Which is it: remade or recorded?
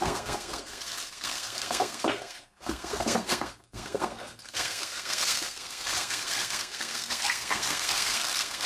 remade